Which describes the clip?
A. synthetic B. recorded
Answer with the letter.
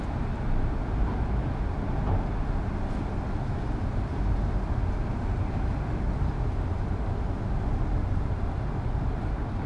B